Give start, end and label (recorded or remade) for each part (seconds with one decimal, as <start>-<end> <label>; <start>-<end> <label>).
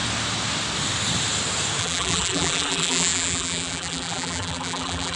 0.0-1.8 recorded; 1.8-5.2 remade